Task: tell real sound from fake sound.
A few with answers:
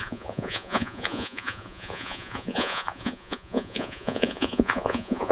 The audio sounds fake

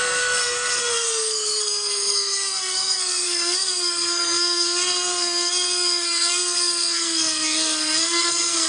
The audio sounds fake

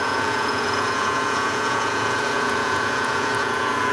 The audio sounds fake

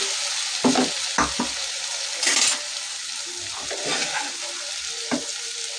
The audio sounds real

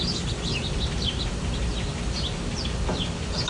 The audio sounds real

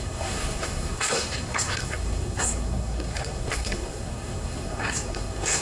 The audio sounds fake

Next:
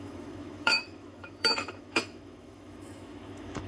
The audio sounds fake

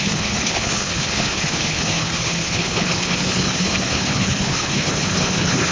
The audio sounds fake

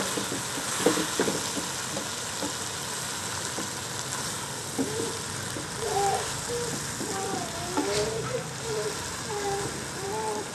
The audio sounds real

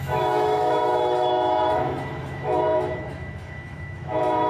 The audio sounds fake